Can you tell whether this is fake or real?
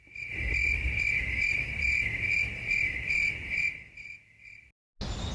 real